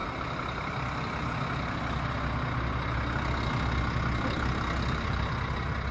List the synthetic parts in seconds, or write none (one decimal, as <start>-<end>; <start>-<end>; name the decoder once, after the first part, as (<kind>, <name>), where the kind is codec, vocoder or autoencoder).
none